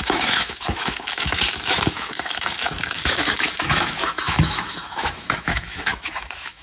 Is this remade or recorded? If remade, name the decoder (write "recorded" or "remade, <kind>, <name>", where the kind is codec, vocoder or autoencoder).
remade, autoencoder, DAC-VAE